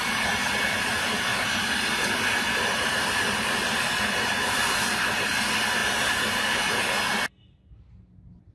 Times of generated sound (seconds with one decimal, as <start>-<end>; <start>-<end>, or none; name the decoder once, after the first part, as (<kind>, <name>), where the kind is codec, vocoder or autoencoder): 0.0-1.3 (vocoder, BigVGAN v2); 3.0-5.8